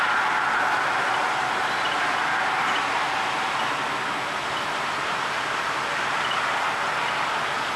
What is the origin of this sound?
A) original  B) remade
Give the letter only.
A